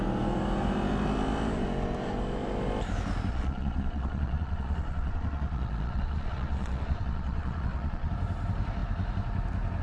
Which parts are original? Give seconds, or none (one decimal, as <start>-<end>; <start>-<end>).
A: 0.0-3.3; 8.1-9.8